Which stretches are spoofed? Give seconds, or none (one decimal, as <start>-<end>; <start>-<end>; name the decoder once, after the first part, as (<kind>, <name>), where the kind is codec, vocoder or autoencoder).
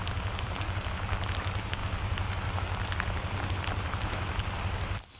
none